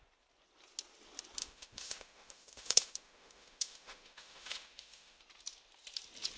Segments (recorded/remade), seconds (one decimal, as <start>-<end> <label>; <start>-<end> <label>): 0.0-1.4 recorded; 1.4-5.2 remade; 5.2-6.4 recorded